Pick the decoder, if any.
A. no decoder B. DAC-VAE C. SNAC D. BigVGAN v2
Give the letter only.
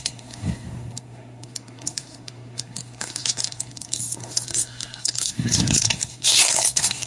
C